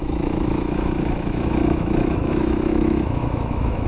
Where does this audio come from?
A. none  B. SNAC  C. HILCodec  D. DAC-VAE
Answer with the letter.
D